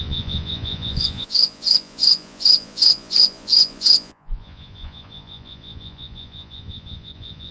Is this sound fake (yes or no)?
yes